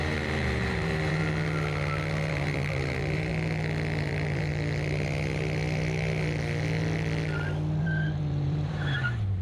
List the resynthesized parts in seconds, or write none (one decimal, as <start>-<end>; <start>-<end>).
0.0-1.2; 2.3-3.3; 4.0-4.5; 7.8-9.4